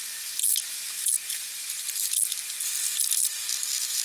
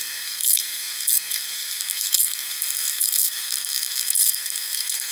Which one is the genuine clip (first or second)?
first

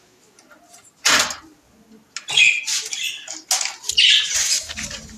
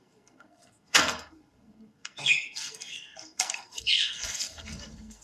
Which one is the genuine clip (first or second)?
first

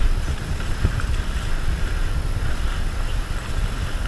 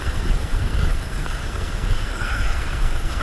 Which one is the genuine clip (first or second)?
first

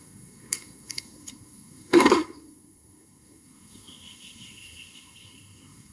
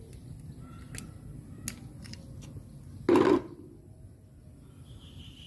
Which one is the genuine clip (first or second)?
second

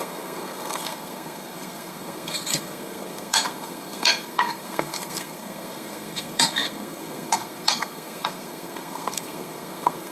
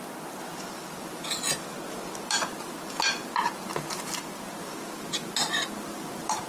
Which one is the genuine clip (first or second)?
second